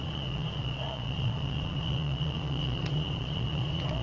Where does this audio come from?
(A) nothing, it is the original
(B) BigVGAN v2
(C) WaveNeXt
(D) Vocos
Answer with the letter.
D